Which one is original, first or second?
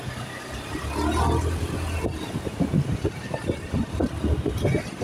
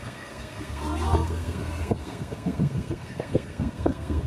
first